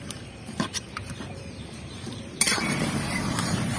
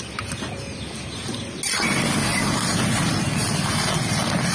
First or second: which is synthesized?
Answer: first